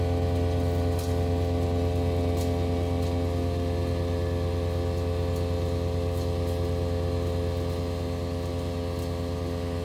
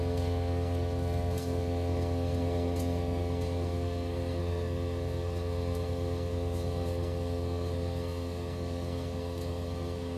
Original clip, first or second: first